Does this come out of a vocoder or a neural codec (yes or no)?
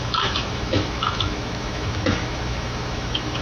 yes